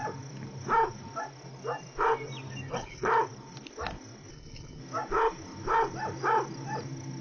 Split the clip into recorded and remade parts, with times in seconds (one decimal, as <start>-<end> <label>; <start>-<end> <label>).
0.0-2.7 recorded; 2.7-3.1 remade; 3.1-4.3 recorded; 4.3-4.8 remade; 4.8-7.2 recorded